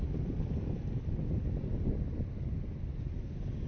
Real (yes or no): yes